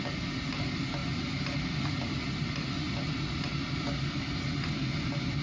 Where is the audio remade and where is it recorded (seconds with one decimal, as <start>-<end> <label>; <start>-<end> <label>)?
0.0-5.4 recorded